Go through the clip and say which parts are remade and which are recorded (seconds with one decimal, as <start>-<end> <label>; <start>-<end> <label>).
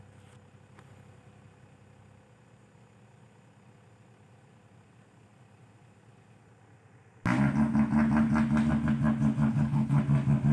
0.0-9.5 recorded; 9.5-10.0 remade; 10.0-10.5 recorded